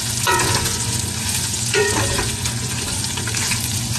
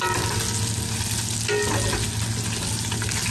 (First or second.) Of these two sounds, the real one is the second